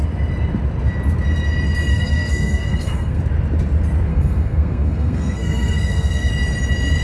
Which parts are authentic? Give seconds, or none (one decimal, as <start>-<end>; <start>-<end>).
0.0-1.9; 3.2-4.1; 6.3-7.0